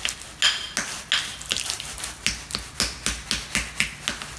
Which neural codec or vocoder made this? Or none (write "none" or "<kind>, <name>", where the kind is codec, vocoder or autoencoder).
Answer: none